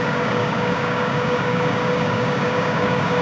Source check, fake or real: fake